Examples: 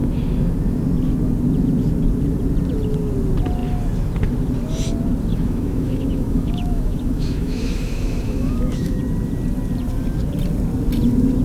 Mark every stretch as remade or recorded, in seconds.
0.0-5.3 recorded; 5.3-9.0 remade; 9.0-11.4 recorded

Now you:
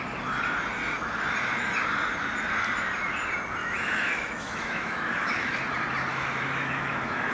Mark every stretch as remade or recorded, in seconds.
0.0-3.6 recorded; 3.6-5.6 remade; 5.6-6.1 recorded; 6.1-7.3 remade